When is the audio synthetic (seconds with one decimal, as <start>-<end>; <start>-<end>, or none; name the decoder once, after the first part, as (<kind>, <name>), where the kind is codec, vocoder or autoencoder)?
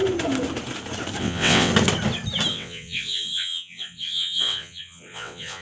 1.2-1.7 (vocoder, WaveNeXt); 2.5-5.6